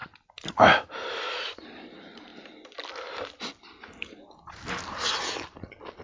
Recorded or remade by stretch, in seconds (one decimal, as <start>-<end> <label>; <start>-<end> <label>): 0.0-0.9 recorded; 0.9-2.3 remade; 2.3-6.0 recorded